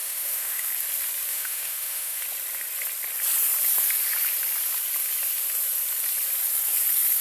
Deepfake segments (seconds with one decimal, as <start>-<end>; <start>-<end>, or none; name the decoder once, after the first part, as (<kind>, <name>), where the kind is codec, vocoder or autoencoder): 0.0-0.7 (autoencoder, DAC-VAE); 1.3-2.2